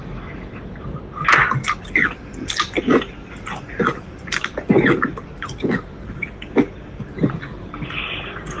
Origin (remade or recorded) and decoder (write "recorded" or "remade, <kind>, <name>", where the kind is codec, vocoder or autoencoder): recorded